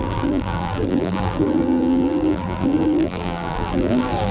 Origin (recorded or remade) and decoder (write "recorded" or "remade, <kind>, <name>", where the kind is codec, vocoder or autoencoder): remade, vocoder, BigVGAN v2